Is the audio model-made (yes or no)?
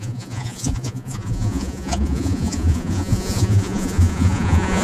yes